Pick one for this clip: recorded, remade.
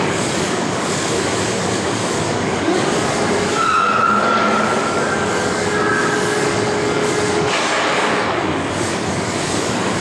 remade